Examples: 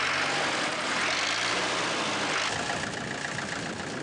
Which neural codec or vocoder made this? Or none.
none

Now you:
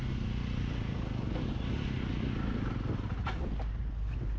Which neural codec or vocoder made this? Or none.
none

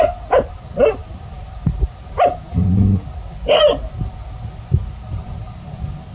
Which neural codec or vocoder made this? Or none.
none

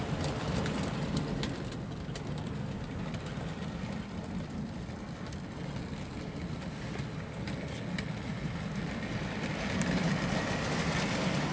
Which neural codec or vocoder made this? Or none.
none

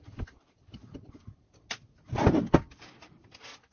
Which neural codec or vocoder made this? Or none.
none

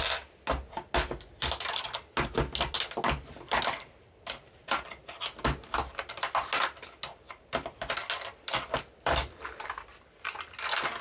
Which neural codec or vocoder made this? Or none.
none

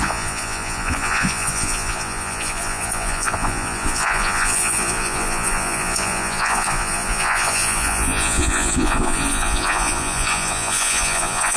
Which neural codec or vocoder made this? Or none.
vocoder, Vocos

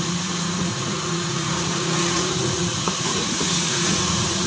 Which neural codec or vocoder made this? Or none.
vocoder, Vocos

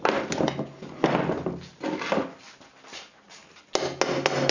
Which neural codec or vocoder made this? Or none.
none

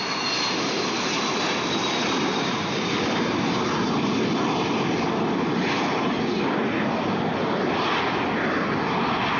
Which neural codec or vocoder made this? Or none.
none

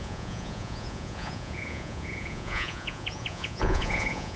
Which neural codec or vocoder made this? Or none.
vocoder, Vocos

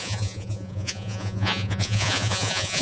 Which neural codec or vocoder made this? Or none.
vocoder, Vocos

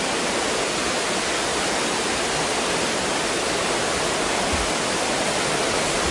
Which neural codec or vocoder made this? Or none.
none